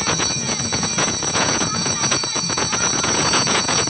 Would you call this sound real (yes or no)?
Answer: no